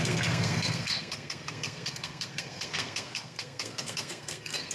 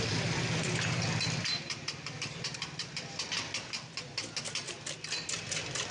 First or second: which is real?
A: second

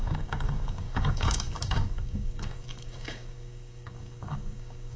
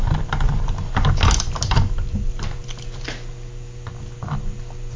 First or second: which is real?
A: second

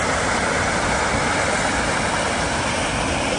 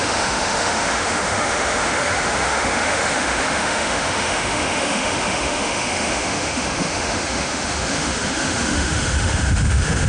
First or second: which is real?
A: first